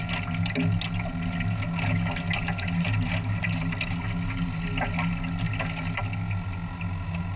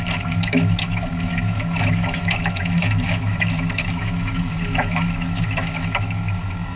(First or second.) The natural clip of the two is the first